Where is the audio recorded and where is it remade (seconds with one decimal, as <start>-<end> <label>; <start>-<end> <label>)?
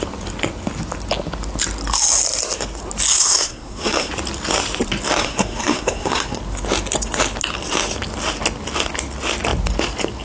0.0-3.1 recorded; 3.1-4.1 remade; 4.1-5.2 recorded; 5.2-6.4 remade; 6.4-10.2 recorded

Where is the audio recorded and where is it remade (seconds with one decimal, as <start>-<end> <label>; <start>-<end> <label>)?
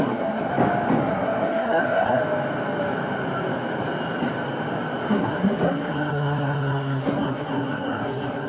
0.0-0.5 remade; 0.5-1.0 recorded; 1.0-2.2 remade; 2.2-5.1 recorded; 5.1-8.5 remade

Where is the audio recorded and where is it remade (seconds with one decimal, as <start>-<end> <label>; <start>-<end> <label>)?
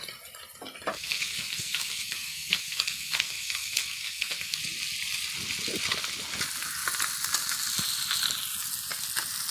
0.0-0.9 recorded; 0.9-4.6 remade; 4.6-9.5 recorded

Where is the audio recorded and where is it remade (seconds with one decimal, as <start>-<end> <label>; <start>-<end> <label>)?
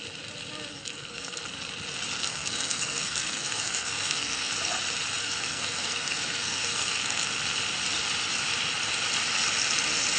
0.0-0.7 recorded; 0.7-1.4 remade; 1.4-2.2 recorded; 2.2-4.5 remade; 4.5-5.2 recorded; 5.2-7.3 remade; 7.3-10.2 recorded